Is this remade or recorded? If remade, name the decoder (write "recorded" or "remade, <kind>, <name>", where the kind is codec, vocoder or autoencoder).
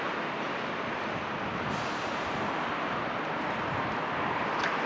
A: recorded